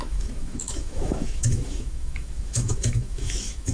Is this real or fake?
fake